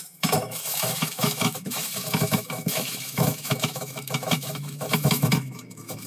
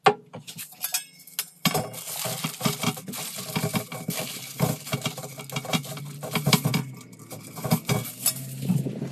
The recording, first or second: second